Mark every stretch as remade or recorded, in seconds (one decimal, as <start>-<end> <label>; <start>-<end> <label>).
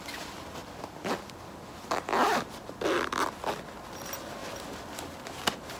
0.0-5.8 recorded